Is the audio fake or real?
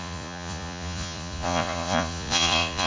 fake